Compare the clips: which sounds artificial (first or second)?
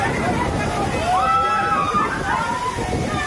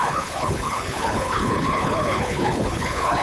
second